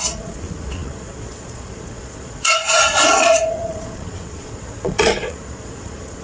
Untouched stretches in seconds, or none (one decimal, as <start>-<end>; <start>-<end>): none